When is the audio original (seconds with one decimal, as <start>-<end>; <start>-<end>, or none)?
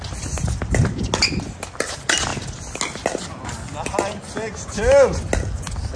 0.0-6.0